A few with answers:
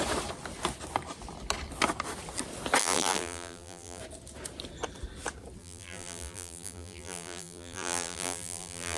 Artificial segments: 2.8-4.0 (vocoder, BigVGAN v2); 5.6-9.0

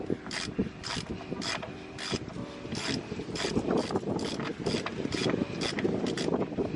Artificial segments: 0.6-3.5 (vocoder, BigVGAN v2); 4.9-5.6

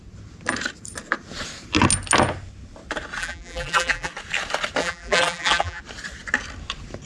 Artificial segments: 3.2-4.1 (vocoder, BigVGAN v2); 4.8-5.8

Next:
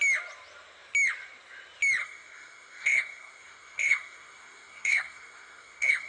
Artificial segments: 2.0-6.1 (codec, SNAC)

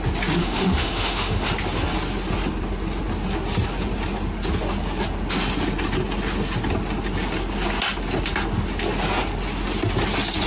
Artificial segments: 0.4-1.5 (autoencoder, DAC-VAE)